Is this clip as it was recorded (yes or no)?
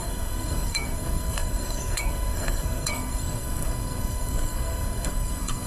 no